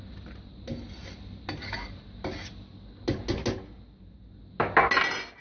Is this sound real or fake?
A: real